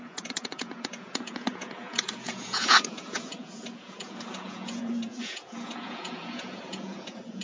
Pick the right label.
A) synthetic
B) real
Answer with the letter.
A